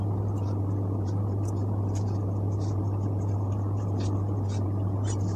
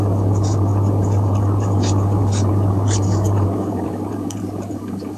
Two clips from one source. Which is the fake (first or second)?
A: second